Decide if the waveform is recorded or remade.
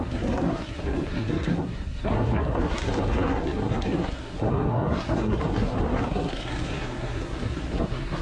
remade